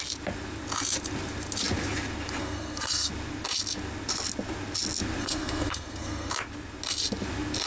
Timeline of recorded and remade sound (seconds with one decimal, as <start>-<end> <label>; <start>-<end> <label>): 0.0-2.4 recorded; 2.4-3.1 remade; 3.1-5.2 recorded; 5.2-6.3 remade; 6.3-7.7 recorded

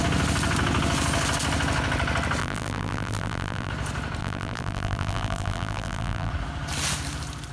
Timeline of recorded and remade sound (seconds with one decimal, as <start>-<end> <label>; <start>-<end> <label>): 0.0-2.4 recorded; 2.4-3.7 remade; 3.7-4.2 recorded; 4.2-6.3 remade; 6.3-7.5 recorded

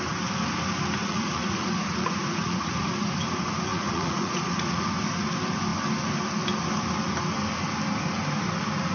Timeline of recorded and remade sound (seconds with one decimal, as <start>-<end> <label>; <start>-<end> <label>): 0.0-1.0 recorded; 1.0-2.8 remade; 2.8-3.7 recorded; 3.7-4.9 remade; 4.9-8.9 recorded

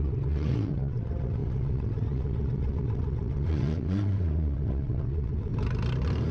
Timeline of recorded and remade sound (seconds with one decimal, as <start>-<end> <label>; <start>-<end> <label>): 0.0-5.5 remade; 5.5-6.3 recorded